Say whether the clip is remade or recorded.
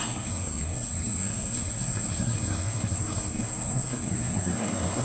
remade